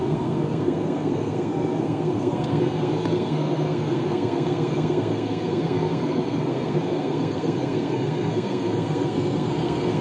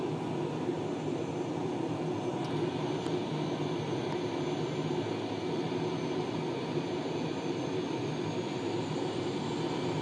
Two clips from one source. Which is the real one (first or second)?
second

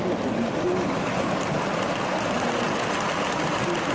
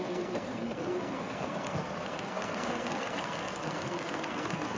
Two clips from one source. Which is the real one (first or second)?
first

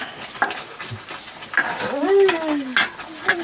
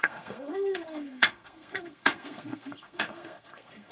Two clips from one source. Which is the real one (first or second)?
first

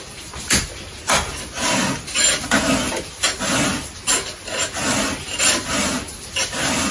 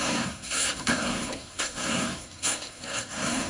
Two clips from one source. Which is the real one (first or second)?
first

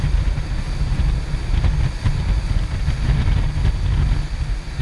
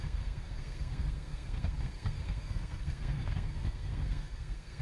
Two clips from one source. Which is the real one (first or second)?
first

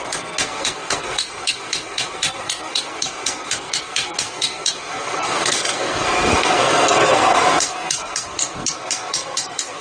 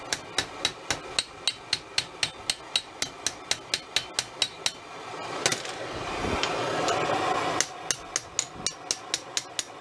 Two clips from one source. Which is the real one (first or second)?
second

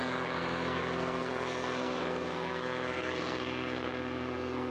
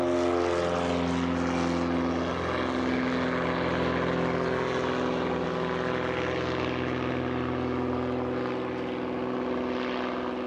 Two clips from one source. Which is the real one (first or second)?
second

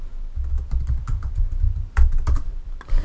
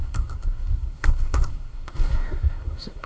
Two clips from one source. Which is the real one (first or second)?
first